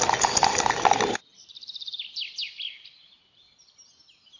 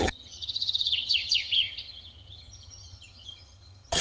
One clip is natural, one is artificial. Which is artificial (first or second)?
second